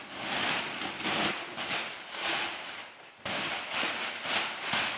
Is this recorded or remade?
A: recorded